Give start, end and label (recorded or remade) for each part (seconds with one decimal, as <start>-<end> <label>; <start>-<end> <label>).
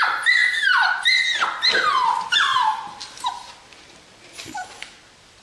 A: 0.0-0.4 recorded; 0.4-1.0 remade; 1.0-2.5 recorded; 2.5-3.5 remade; 3.5-5.4 recorded